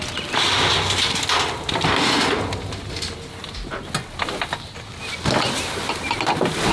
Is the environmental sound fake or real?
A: real